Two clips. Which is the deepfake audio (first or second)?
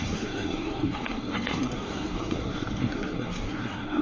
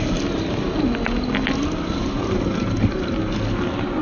first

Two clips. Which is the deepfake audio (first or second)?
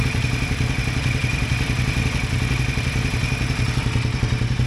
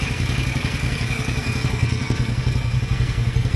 second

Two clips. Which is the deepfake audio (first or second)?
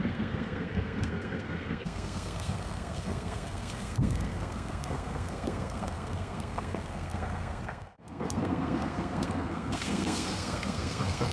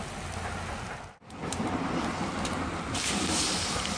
first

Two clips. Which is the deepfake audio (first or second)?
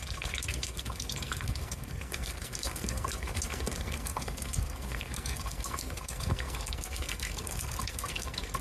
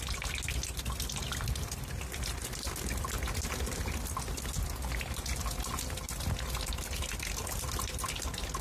first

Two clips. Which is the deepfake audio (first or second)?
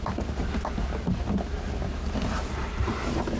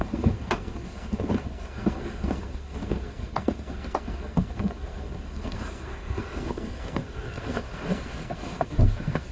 second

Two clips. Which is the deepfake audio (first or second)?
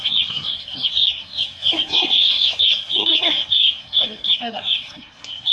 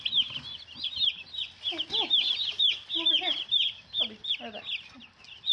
first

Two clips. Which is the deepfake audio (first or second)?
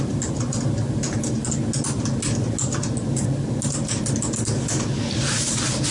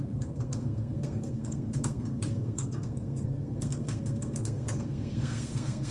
second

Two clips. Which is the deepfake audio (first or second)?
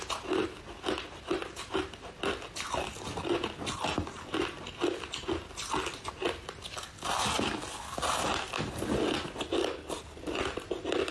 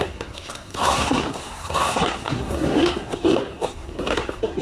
second